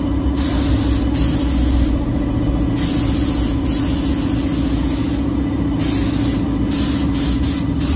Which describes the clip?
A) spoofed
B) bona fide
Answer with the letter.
B